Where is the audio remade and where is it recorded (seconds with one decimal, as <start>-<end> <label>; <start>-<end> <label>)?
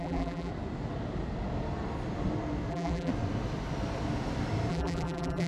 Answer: 0.0-0.5 remade; 0.5-2.7 recorded; 2.7-3.1 remade; 3.1-4.7 recorded; 4.7-5.5 remade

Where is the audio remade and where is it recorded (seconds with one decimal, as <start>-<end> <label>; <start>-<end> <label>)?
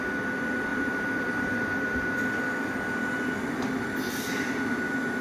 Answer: 0.0-0.7 recorded; 0.7-2.2 remade; 2.2-5.2 recorded